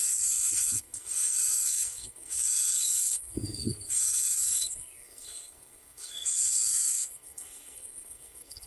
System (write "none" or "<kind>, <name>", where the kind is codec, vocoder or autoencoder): codec, SNAC